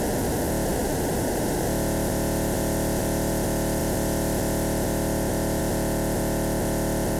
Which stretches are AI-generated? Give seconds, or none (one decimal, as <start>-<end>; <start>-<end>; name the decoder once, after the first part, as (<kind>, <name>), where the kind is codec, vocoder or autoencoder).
0.7-3.3 (vocoder, BigVGAN v2); 3.8-5.6